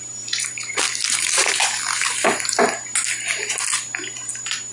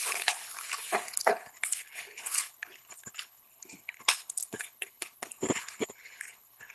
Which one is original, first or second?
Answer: first